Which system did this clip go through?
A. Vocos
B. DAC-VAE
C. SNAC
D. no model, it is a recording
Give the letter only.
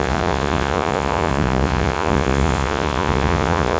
A